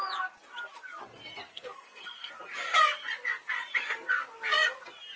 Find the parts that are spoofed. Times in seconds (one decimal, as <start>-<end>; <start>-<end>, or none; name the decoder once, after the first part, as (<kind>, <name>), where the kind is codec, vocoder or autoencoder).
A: 1.5-2.3 (codec, SNAC)